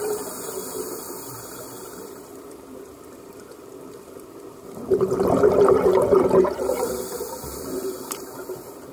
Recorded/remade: remade